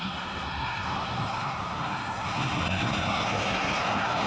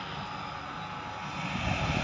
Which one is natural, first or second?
second